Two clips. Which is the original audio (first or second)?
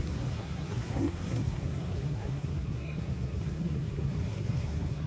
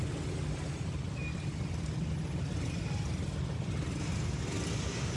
second